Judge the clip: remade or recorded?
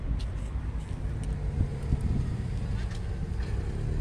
recorded